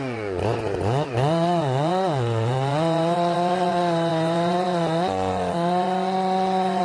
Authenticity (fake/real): fake